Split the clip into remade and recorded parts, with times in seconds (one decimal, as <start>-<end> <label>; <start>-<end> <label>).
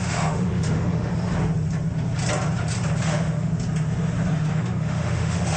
0.0-1.1 remade; 1.1-3.0 recorded; 3.0-3.5 remade; 3.5-4.5 recorded; 4.5-5.6 remade